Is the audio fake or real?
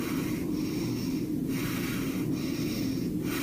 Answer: real